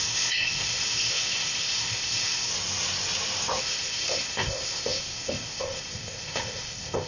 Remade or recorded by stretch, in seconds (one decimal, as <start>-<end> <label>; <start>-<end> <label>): 0.0-2.5 remade; 2.5-3.6 recorded; 3.6-7.1 remade

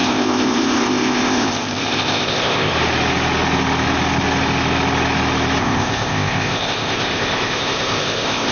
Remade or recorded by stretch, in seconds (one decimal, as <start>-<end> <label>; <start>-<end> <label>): 0.0-2.7 remade; 2.7-5.6 recorded; 5.6-8.5 remade

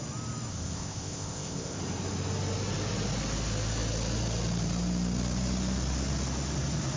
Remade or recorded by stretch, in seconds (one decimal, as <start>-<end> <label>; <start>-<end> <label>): 0.0-0.5 recorded; 0.5-1.8 remade; 1.8-7.0 recorded

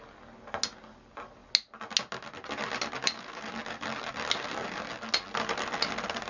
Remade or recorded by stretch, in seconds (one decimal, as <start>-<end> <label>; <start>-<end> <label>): 0.0-6.3 recorded

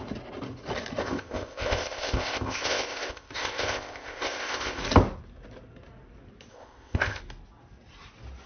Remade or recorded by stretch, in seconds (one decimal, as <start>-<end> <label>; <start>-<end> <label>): 0.0-1.0 recorded; 1.0-4.8 remade; 4.8-6.5 recorded; 6.5-7.2 remade; 7.2-8.5 recorded

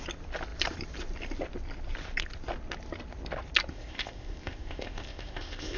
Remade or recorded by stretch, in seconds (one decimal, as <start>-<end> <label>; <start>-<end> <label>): 0.0-3.7 recorded; 3.7-5.8 remade

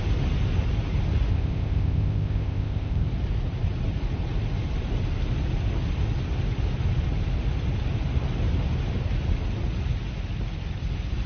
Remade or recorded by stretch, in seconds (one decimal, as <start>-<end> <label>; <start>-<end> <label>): 0.0-1.3 recorded; 1.3-3.1 remade; 3.1-11.3 recorded

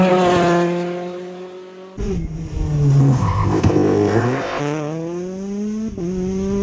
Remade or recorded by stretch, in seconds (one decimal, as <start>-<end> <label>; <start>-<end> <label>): 0.0-3.0 recorded; 3.0-4.6 remade; 4.6-6.6 recorded